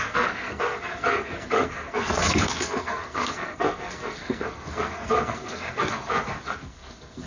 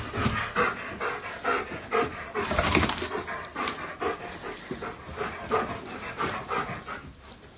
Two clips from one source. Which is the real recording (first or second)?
second